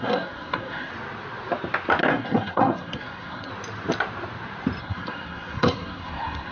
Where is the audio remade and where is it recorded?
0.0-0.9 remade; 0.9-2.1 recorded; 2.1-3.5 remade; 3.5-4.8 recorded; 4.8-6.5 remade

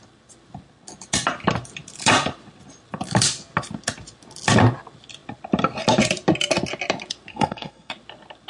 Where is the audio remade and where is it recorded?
0.0-7.3 recorded; 7.3-7.9 remade; 7.9-8.5 recorded

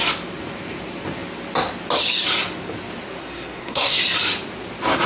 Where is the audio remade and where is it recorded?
0.0-3.2 recorded; 3.2-4.0 remade; 4.0-5.1 recorded

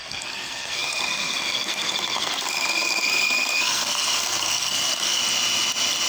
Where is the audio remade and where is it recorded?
0.0-5.2 remade; 5.2-6.1 recorded

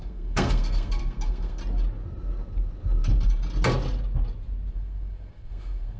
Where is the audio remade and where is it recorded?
0.0-1.6 remade; 1.6-4.7 recorded; 4.7-6.0 remade

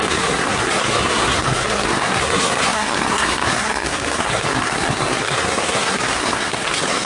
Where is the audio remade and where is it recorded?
0.0-7.1 remade

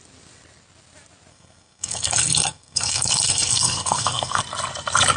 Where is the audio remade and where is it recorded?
0.0-1.3 recorded; 1.3-4.4 remade; 4.4-5.2 recorded

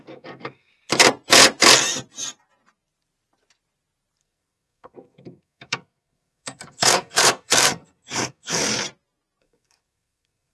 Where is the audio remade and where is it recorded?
0.0-0.7 remade; 0.7-4.2 recorded; 4.2-8.6 remade; 8.6-9.4 recorded; 9.4-10.5 remade